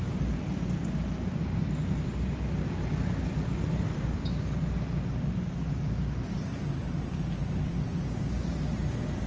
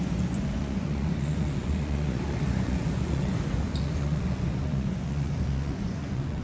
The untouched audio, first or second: first